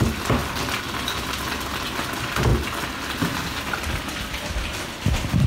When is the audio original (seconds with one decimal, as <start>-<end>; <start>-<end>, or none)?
0.0-5.5